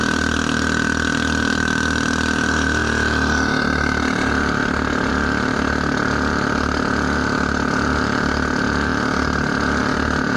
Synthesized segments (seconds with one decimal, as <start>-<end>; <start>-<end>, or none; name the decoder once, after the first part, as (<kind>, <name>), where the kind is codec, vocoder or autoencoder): none